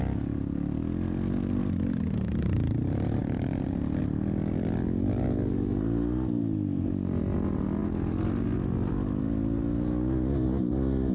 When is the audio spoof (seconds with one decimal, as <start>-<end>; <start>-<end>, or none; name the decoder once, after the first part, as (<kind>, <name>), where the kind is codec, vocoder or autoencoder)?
none